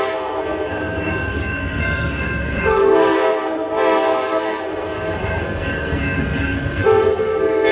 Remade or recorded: remade